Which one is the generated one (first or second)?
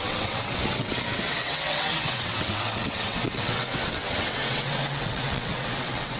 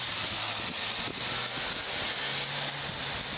first